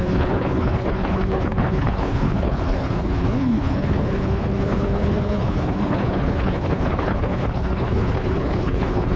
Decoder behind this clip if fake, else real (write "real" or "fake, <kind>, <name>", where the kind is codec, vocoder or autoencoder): fake, codec, HILCodec